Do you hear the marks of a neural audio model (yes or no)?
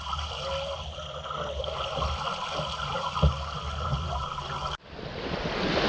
no